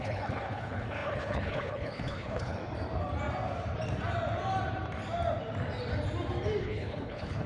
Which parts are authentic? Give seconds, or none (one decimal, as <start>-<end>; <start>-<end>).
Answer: 2.6-6.6